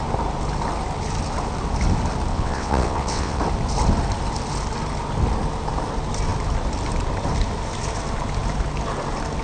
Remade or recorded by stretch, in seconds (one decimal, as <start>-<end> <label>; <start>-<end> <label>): 0.0-2.3 recorded; 2.3-3.4 remade; 3.4-9.4 recorded